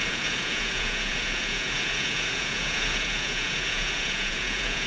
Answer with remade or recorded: remade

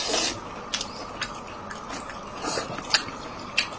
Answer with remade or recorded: recorded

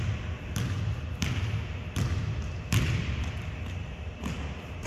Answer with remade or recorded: recorded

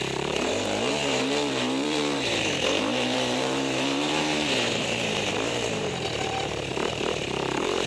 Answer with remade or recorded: remade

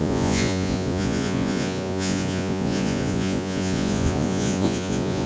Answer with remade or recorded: remade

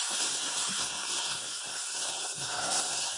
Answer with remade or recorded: remade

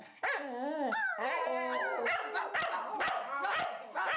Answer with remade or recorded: recorded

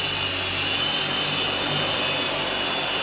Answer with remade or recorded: recorded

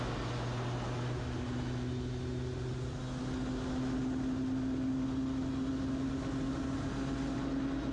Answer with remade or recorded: recorded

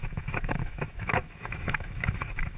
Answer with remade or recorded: remade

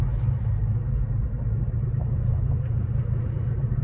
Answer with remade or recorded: recorded